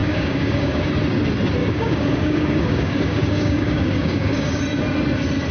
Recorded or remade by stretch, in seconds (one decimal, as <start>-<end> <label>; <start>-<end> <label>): 0.0-0.9 remade; 0.9-1.6 recorded; 1.6-4.6 remade; 4.6-5.5 recorded